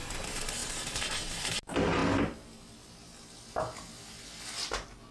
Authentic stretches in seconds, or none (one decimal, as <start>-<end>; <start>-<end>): 0.0-5.1